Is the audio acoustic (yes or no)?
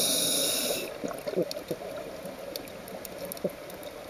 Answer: yes